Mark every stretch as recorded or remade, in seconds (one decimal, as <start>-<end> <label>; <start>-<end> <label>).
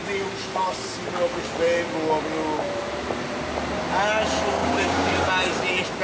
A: 0.0-4.6 recorded; 4.6-5.3 remade; 5.3-6.0 recorded